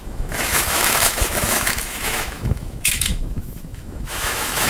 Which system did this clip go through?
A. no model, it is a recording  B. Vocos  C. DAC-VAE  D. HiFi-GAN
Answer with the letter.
C